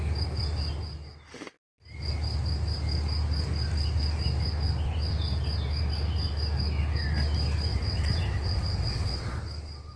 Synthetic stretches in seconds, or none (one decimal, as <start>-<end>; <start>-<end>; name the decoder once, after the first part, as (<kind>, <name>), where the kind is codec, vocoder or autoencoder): 7.7-9.4 (vocoder, WaveNeXt)